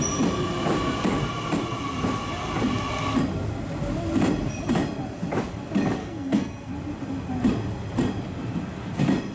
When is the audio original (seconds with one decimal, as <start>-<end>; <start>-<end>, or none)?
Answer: 0.0-6.0; 6.7-9.3